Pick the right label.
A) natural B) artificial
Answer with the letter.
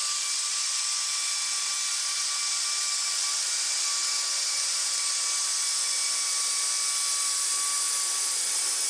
A